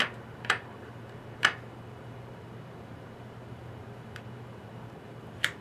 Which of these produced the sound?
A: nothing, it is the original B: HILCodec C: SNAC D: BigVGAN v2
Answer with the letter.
D